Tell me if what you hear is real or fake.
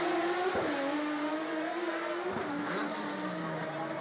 real